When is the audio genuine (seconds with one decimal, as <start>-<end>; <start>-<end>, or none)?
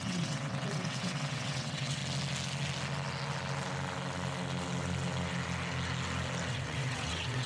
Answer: 2.0-6.5